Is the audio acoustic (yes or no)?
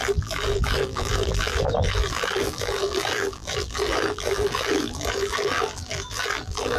no